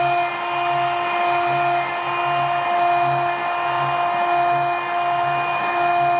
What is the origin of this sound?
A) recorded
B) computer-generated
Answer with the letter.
A